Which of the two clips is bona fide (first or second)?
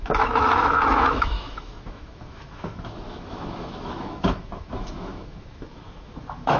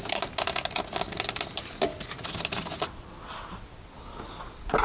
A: second